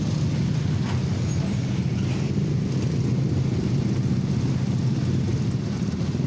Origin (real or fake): real